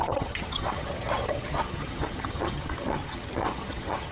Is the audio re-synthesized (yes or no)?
yes